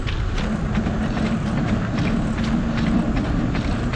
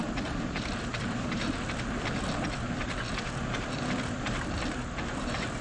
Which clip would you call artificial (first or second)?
second